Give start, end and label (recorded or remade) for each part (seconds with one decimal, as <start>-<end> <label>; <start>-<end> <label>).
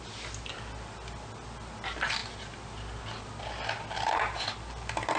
0.0-5.2 recorded